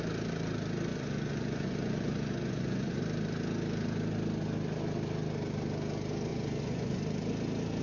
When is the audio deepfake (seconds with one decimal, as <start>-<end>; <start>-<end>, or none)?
0.9-3.0; 6.3-7.0